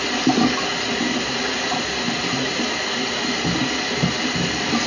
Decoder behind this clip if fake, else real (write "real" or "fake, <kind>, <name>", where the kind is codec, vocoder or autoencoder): real